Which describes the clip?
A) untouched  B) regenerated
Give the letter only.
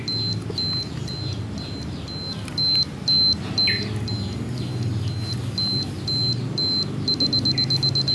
A